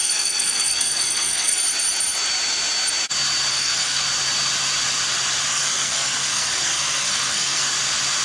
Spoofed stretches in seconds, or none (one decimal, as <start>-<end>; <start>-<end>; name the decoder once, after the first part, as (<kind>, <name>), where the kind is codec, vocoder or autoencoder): 0.0-1.6 (codec, SNAC); 3.5-4.0; 5.5-7.7